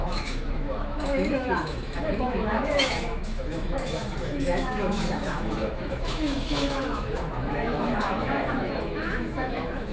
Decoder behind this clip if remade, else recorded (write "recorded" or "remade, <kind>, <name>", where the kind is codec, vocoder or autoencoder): remade, autoencoder, DAC-VAE